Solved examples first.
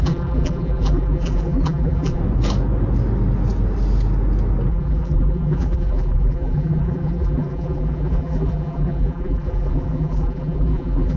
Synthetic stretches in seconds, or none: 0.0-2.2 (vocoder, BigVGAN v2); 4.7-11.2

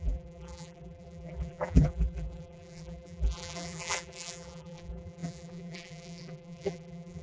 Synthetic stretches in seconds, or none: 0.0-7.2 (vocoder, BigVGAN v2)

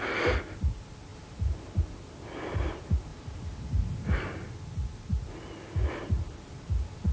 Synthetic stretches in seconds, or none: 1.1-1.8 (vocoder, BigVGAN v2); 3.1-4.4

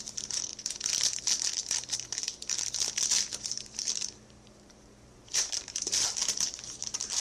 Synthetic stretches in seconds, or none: 0.0-0.5 (vocoder, BigVGAN v2); 3.5-6.2; 6.8-7.2